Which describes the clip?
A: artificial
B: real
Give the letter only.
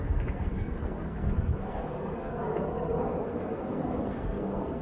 A